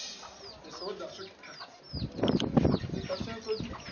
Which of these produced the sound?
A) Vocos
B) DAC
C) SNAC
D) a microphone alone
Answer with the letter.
D